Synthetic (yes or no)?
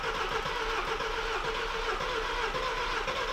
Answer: no